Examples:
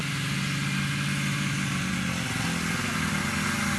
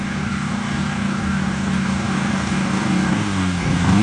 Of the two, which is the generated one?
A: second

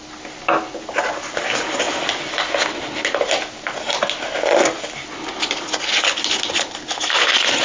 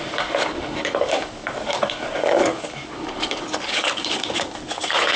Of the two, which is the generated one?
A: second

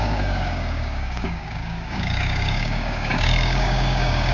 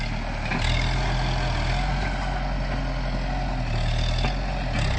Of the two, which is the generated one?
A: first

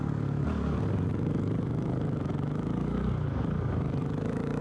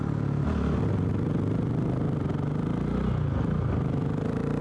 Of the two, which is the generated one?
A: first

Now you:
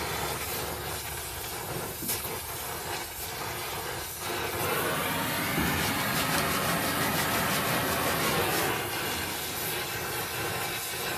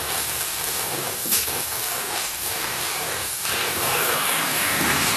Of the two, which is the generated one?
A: second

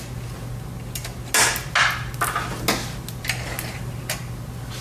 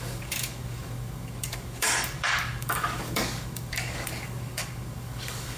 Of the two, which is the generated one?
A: second